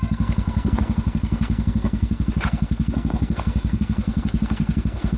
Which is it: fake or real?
fake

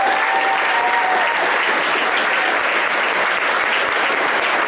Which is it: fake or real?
real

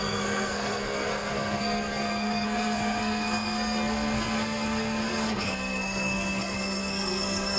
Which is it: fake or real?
fake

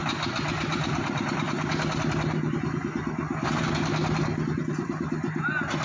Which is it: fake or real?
real